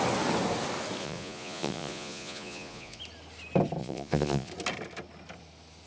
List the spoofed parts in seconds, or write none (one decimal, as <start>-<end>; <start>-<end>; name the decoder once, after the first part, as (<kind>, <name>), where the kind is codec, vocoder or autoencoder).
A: 1.0-3.0 (vocoder, Vocos); 3.8-4.5